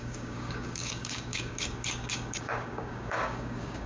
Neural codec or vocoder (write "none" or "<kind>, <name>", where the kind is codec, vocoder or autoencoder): codec, DAC